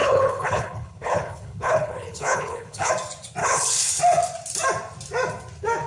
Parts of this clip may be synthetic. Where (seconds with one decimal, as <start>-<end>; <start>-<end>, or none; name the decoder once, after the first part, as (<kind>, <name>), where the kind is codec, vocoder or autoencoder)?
0.0-2.9 (codec, HILCodec); 3.4-4.0